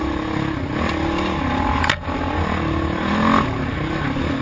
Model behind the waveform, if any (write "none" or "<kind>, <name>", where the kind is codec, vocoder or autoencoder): none